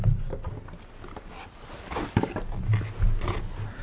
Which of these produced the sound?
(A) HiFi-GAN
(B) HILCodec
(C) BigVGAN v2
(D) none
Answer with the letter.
D